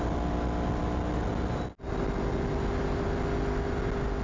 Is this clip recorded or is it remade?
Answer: recorded